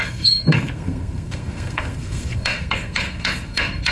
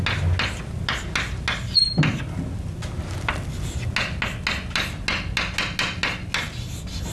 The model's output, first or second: first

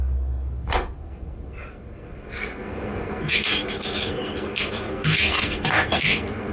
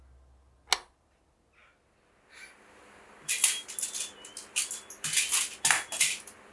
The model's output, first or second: first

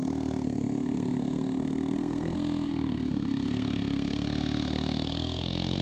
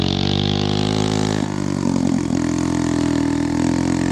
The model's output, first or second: first